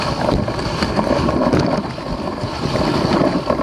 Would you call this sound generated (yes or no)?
yes